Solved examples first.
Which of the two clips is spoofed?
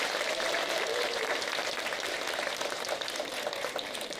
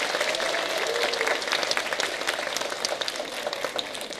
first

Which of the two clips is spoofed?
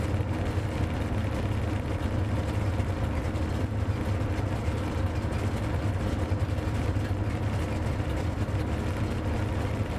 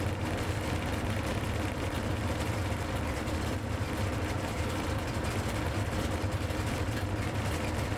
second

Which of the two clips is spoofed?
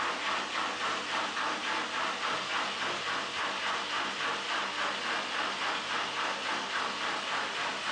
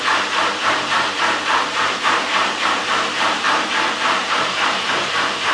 second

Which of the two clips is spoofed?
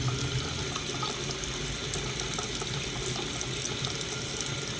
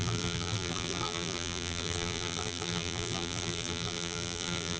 second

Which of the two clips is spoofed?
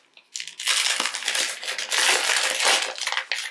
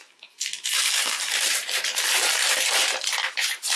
second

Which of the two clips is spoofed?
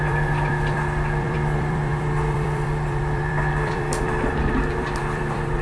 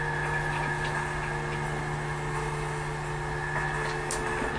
first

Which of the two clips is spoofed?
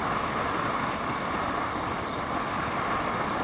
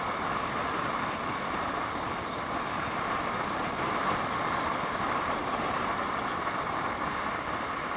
second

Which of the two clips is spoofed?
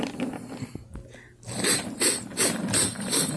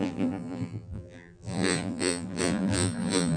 second